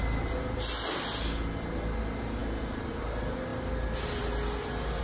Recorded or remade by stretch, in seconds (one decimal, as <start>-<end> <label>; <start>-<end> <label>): 0.0-5.0 recorded